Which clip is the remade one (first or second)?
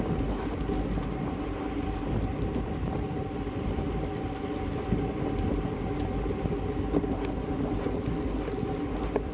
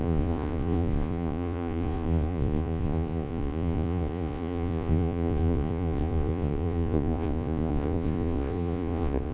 second